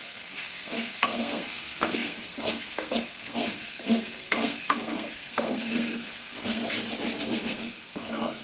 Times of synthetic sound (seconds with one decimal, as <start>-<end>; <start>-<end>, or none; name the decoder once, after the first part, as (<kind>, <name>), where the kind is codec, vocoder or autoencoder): 0.0-6.6 (codec, SNAC); 7.2-8.4